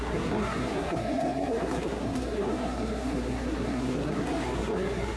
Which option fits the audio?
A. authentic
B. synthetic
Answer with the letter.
B